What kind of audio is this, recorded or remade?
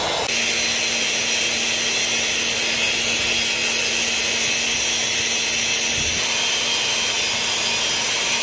recorded